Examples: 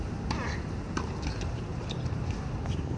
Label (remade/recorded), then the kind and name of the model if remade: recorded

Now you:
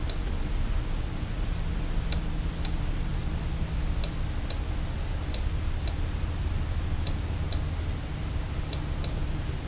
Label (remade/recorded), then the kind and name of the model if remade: recorded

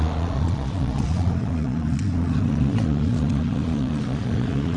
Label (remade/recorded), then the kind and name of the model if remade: remade, vocoder, Vocos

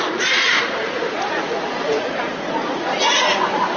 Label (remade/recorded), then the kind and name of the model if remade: remade, vocoder, Vocos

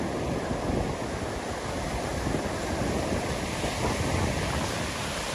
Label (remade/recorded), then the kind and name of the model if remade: recorded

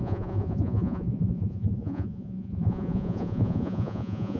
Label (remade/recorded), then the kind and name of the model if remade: remade, vocoder, Vocos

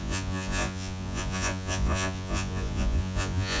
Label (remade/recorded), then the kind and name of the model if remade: remade, vocoder, Vocos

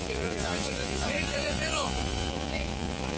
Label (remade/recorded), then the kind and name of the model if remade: remade, vocoder, Vocos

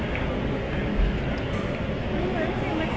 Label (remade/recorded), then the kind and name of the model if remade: recorded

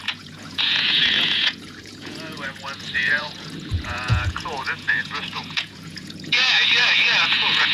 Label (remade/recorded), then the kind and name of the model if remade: remade, vocoder, Vocos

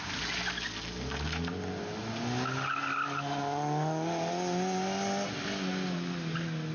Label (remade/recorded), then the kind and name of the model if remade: recorded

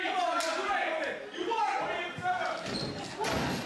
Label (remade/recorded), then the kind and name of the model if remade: recorded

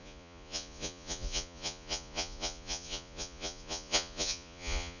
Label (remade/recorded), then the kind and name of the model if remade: remade, vocoder, Vocos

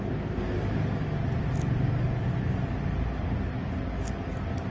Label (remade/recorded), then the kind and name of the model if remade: recorded